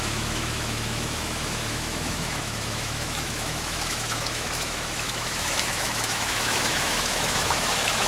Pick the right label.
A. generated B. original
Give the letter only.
A